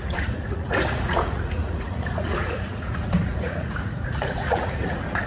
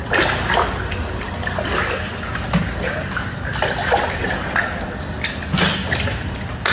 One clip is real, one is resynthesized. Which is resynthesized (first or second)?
first